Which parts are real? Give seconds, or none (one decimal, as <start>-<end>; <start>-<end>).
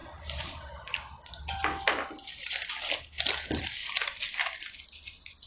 0.0-5.5